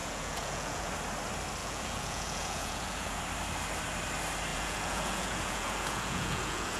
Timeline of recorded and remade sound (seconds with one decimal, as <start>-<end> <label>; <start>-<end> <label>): 0.0-0.9 remade; 0.9-1.6 recorded; 1.6-3.2 remade; 3.2-4.5 recorded; 4.5-6.8 remade